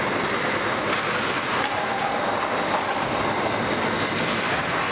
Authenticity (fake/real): real